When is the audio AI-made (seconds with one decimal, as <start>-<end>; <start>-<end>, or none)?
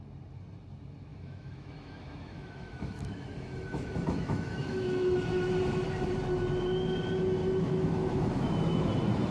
1.1-5.5; 7.4-8.9